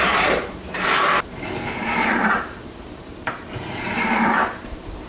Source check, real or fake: fake